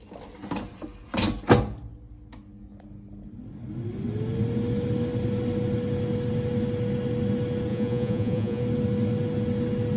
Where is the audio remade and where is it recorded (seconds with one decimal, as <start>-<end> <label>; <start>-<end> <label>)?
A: 0.0-7.7 recorded; 7.7-8.6 remade; 8.6-10.0 recorded